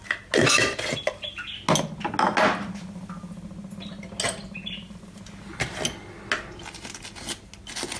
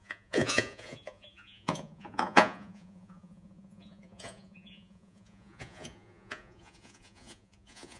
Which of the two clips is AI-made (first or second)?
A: second